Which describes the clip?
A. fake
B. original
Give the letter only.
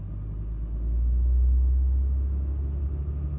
B